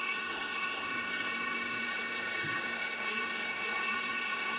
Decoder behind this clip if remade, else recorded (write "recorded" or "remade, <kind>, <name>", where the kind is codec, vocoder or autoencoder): remade, codec, SNAC